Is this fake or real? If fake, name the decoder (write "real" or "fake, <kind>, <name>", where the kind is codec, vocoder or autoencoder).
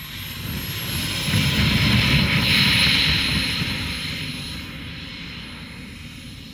real